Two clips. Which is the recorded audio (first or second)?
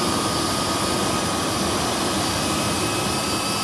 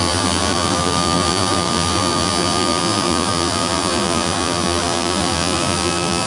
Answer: first